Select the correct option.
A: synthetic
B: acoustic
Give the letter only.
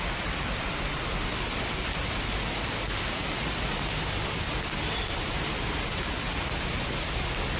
B